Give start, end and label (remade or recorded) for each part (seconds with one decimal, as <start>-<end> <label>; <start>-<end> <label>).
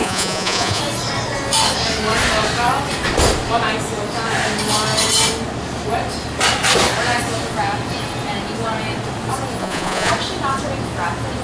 0.0-0.8 remade; 0.8-9.6 recorded; 9.6-10.1 remade; 10.1-11.4 recorded